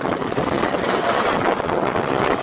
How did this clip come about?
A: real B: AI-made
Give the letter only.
B